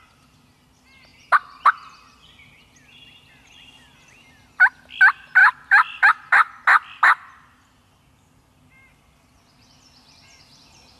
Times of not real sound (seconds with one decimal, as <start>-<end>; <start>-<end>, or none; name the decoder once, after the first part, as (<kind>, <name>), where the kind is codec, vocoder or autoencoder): none